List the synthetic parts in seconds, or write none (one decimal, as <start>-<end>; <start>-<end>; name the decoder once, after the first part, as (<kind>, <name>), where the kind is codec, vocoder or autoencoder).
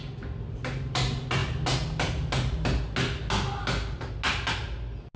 none